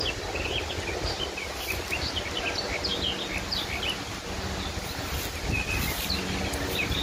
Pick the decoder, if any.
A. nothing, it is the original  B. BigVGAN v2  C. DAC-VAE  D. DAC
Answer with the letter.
A